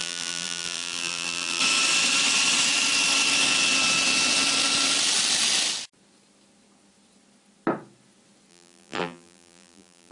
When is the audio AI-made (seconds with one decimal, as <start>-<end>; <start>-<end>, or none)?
0.0-1.6; 8.5-10.1